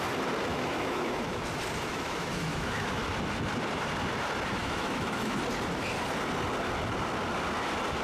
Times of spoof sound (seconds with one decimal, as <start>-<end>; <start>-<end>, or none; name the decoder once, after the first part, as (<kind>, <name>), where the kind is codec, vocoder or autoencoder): 0.5-1.4 (autoencoder, DAC-VAE); 1.9-3.0; 4.6-5.4